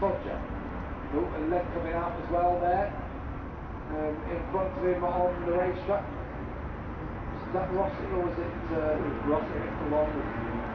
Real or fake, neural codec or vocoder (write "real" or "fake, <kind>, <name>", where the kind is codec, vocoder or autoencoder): real